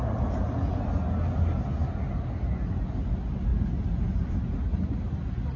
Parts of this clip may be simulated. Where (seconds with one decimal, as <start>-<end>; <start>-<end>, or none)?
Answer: none